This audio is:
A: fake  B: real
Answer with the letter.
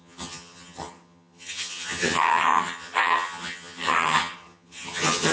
A